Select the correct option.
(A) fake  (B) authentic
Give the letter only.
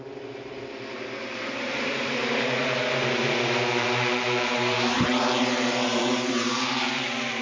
A